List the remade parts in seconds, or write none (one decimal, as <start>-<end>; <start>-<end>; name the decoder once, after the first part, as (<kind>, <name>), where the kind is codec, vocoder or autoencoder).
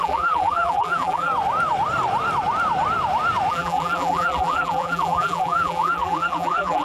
0.0-1.3 (vocoder, BigVGAN v2); 3.5-6.8